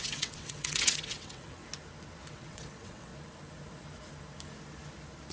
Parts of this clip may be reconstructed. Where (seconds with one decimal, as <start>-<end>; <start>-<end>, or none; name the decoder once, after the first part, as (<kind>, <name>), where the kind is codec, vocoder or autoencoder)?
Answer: 0.0-1.6 (vocoder, WaveNeXt); 2.3-3.1